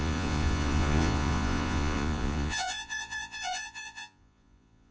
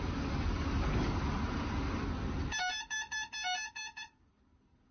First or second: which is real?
second